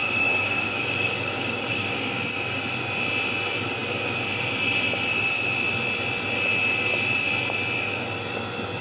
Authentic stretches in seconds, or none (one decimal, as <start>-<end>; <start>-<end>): 2.6-8.8

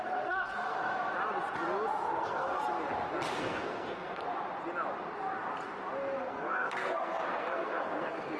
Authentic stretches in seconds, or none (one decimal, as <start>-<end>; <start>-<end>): 0.9-2.1; 2.6-3.4; 4.3-6.2

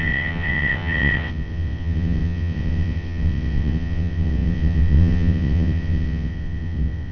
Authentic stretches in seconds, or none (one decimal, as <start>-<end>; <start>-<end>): none

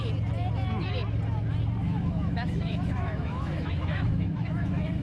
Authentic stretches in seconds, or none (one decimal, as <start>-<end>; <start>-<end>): 0.0-1.8

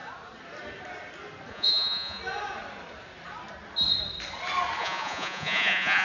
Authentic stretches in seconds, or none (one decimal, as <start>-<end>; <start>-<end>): 0.0-1.5; 2.2-4.8

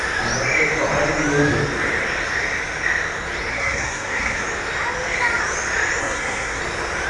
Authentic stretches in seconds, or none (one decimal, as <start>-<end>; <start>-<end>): 0.0-3.5; 4.4-6.0; 6.6-7.1

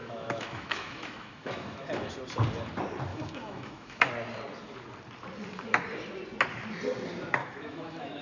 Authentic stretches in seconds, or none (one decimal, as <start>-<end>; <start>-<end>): 2.1-3.1; 4.1-7.4